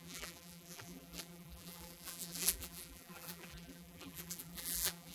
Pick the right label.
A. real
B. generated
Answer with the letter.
B